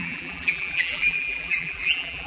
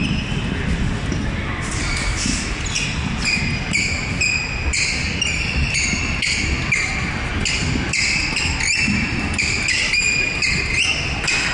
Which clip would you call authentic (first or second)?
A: second